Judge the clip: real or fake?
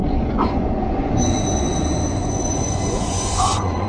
fake